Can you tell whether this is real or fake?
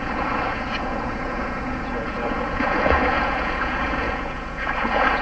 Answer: fake